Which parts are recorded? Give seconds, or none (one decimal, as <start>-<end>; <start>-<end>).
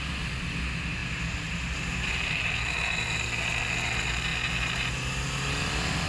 0.0-6.1